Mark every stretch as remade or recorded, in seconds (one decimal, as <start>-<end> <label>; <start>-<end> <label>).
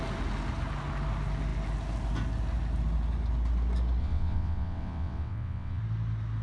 0.0-4.0 recorded; 4.0-5.8 remade; 5.8-6.4 recorded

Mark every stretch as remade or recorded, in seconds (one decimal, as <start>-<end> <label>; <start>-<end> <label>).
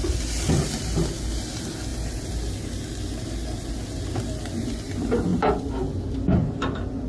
0.0-5.3 recorded; 5.3-7.1 remade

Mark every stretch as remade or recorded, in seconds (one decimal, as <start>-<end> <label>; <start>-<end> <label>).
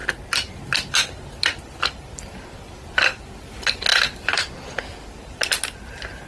0.0-3.9 recorded; 3.9-4.8 remade; 4.8-6.3 recorded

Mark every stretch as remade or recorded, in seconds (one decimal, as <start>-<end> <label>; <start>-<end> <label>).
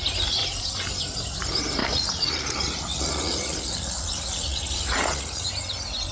0.0-1.8 recorded; 1.8-5.5 remade; 5.5-6.1 recorded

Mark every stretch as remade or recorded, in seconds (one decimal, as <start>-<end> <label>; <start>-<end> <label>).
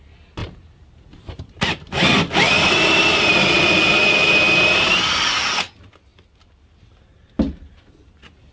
0.0-0.4 recorded; 0.4-1.9 remade; 1.9-8.5 recorded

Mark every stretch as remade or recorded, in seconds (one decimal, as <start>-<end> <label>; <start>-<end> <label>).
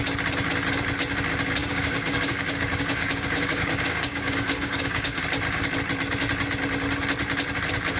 0.0-1.6 recorded; 1.6-5.2 remade; 5.2-8.0 recorded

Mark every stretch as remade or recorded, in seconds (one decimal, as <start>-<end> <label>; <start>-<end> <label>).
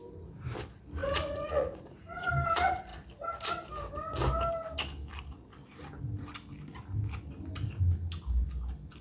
0.0-1.0 recorded; 1.0-2.3 remade; 2.3-9.0 recorded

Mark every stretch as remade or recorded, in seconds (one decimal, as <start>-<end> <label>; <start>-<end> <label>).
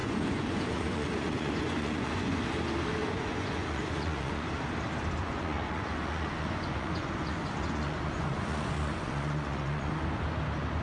0.0-2.4 remade; 2.4-3.0 recorded; 3.0-4.6 remade; 4.6-5.2 recorded; 5.2-9.9 remade; 9.9-10.8 recorded